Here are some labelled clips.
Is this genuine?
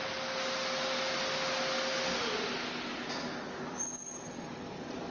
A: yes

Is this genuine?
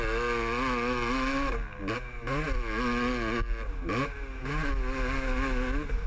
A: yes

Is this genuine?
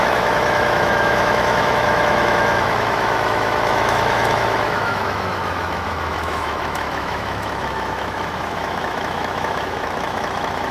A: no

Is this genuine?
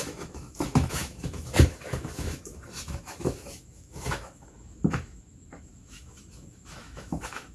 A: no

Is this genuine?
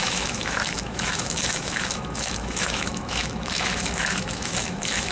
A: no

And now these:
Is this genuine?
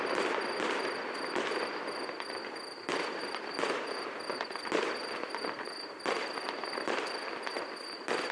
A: yes